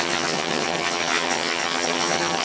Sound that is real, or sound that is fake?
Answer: fake